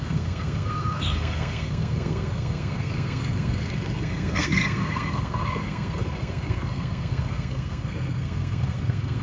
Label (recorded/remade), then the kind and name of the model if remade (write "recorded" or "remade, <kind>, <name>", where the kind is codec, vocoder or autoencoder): remade, codec, SNAC